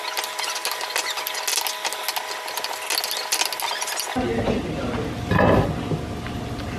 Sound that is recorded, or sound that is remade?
recorded